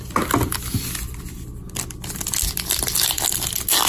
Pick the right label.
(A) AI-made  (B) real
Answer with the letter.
B